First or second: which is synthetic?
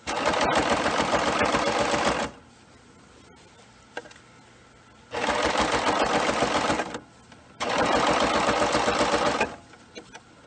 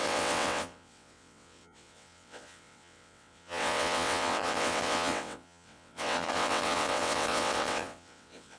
second